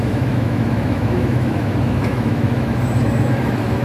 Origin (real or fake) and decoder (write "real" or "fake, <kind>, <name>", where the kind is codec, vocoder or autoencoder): fake, autoencoder, DAC-VAE